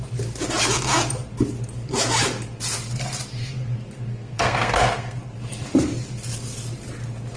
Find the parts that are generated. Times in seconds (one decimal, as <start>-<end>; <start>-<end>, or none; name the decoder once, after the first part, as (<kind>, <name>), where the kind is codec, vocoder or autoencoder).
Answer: 4.1-5.2 (codec, SNAC)